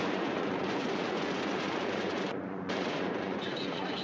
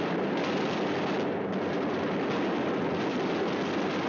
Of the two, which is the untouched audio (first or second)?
second